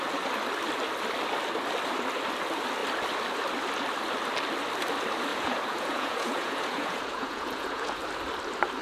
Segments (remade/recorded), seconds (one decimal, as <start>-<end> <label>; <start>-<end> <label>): 0.0-5.3 recorded; 5.3-8.0 remade; 8.0-8.8 recorded